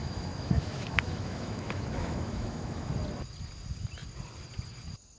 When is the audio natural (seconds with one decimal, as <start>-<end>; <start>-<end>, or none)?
2.9-5.2